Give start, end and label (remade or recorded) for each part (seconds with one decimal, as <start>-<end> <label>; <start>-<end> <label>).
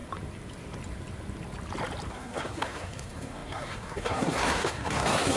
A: 0.0-2.1 recorded; 2.1-5.4 remade